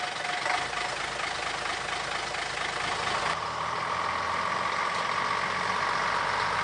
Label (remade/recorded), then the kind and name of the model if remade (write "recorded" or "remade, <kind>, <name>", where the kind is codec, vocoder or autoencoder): recorded